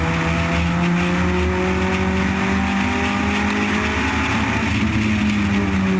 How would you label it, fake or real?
real